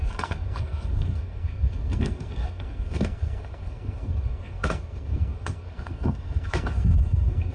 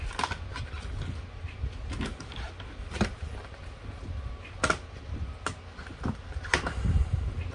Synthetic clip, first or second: first